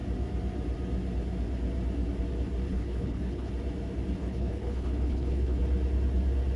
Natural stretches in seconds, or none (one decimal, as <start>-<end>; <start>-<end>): 0.0-2.7; 3.5-4.2; 5.6-6.6